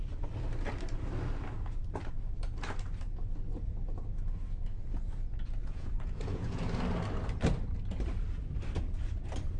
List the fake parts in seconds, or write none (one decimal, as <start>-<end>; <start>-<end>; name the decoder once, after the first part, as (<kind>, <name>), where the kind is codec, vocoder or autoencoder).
5.6-6.6 (vocoder, Vocos)